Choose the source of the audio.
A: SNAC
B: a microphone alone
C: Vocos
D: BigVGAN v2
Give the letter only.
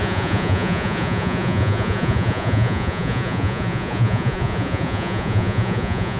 C